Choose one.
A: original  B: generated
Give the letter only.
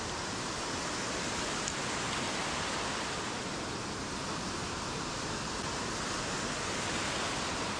A